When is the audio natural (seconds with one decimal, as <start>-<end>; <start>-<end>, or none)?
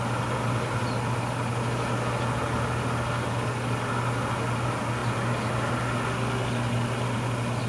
0.0-7.7